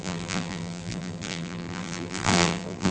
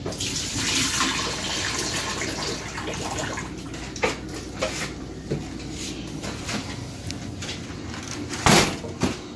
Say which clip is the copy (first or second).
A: first